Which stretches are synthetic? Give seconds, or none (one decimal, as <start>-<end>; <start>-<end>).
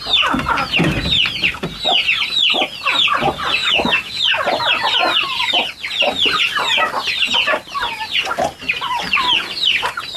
3.6-4.2